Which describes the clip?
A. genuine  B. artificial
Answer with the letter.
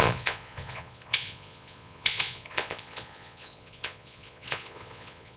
B